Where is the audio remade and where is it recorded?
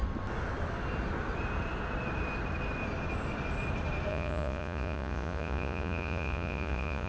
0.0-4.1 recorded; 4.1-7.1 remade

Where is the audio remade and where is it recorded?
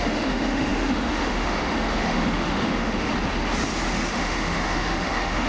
0.0-3.1 remade; 3.1-4.1 recorded; 4.1-5.5 remade